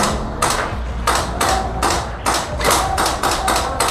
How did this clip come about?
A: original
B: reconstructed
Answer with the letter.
A